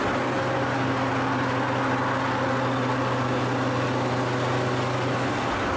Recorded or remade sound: recorded